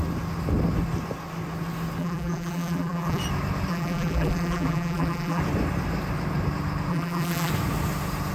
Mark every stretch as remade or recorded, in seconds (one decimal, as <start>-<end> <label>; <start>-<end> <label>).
0.0-2.0 recorded; 2.0-3.2 remade; 3.2-3.7 recorded; 3.7-5.4 remade; 5.4-6.9 recorded; 6.9-7.5 remade; 7.5-8.3 recorded